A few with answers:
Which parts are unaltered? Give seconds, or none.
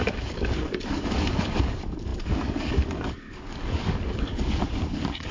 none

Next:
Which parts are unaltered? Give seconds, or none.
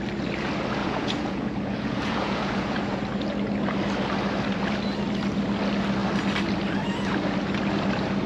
0.0-0.8; 3.0-8.3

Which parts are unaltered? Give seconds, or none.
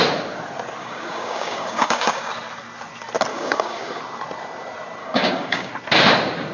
0.0-0.8; 2.3-3.3; 4.0-5.0; 5.7-6.5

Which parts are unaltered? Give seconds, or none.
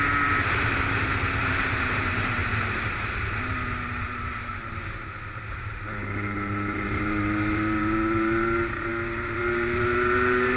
2.4-3.5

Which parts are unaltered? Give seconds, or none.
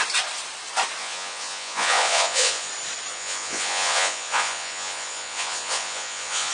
0.0-1.0; 2.7-3.1